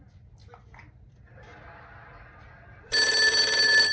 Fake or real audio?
real